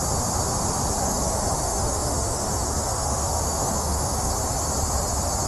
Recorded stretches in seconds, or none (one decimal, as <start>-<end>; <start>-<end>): 0.0-1.0; 4.3-5.5

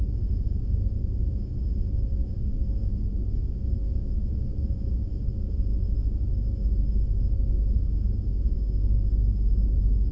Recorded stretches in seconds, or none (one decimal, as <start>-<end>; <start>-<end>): 0.0-2.2; 7.2-10.1